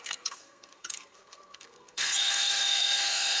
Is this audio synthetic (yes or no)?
yes